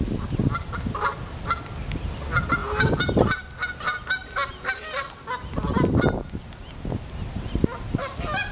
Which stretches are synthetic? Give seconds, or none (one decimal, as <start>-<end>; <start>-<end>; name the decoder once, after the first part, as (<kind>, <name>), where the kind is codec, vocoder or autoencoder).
none